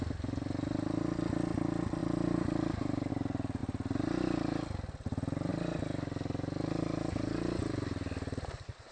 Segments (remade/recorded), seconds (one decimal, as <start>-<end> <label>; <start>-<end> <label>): 0.0-2.0 recorded; 2.0-3.1 remade; 3.1-8.9 recorded